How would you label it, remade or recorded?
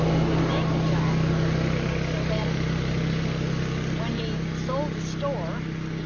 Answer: recorded